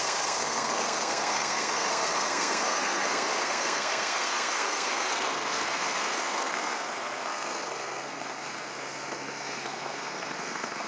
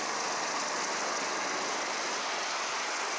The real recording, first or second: second